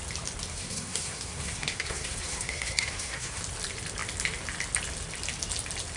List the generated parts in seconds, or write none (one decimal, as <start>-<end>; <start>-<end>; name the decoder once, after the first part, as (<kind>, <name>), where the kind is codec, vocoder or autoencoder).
0.5-3.4 (codec, SNAC)